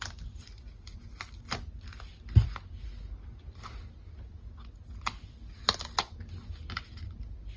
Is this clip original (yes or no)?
yes